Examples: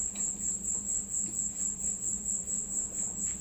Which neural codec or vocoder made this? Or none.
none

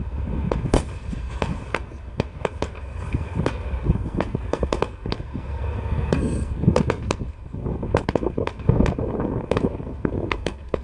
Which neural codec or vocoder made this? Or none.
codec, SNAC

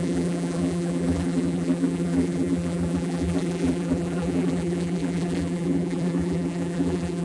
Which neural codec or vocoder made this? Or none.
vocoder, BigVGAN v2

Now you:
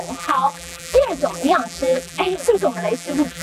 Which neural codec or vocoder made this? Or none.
vocoder, BigVGAN v2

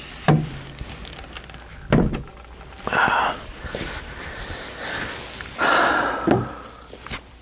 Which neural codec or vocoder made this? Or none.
none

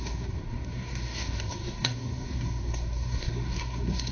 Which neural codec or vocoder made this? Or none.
codec, SNAC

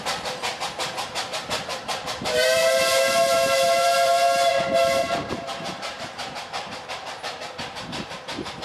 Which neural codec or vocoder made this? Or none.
vocoder, BigVGAN v2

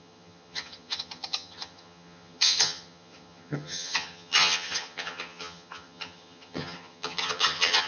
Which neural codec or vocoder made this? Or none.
vocoder, HiFi-GAN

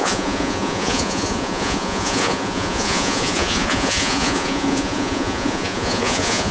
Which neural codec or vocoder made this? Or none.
vocoder, Vocos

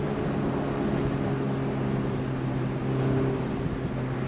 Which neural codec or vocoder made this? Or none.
none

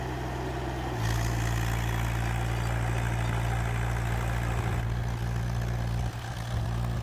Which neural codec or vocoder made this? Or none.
none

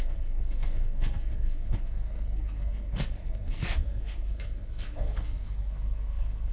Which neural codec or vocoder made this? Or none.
codec, SNAC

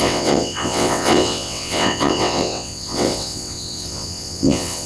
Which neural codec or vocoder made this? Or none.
vocoder, WaveNeXt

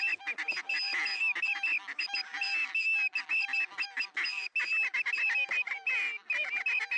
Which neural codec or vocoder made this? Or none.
none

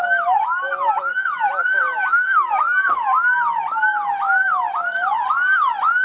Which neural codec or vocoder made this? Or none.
none